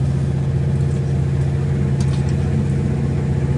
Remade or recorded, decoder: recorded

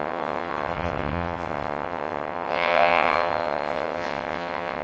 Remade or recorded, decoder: remade, vocoder, WaveNeXt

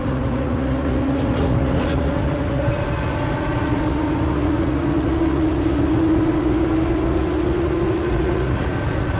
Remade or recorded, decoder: remade, vocoder, Vocos